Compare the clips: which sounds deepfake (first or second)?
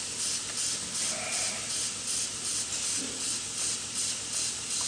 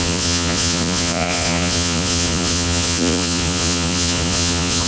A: second